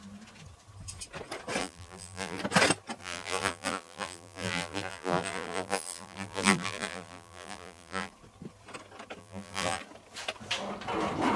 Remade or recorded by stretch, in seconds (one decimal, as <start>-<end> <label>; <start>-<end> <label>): 0.0-1.6 recorded; 1.6-2.4 remade; 2.4-3.0 recorded; 3.0-8.1 remade; 8.1-9.2 recorded; 9.2-9.8 remade; 9.8-11.4 recorded